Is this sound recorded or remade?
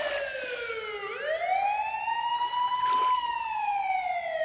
recorded